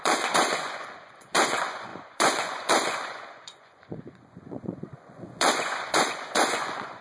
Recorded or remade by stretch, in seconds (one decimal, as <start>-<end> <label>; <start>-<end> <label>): 0.0-7.0 remade